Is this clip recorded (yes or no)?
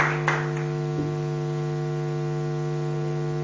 yes